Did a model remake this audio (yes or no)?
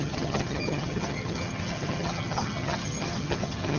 yes